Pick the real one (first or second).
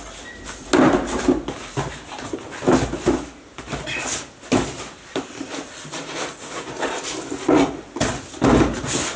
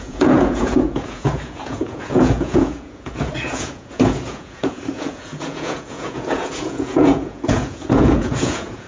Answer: first